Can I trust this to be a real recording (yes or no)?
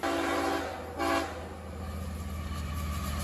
yes